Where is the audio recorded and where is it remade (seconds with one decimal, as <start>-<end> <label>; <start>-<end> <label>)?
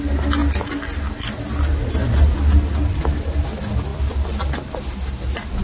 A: 0.0-5.6 recorded